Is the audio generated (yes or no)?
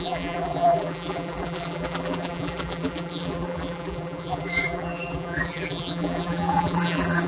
yes